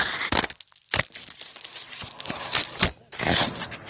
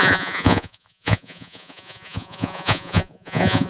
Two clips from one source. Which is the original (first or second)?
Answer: first